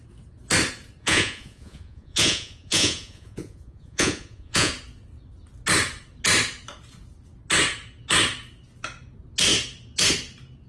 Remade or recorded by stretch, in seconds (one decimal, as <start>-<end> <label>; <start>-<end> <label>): 0.0-1.0 recorded; 1.0-4.7 remade; 4.7-10.7 recorded